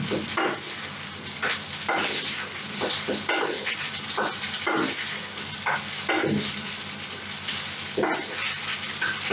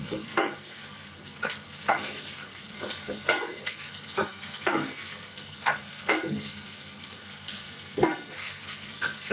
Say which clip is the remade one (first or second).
second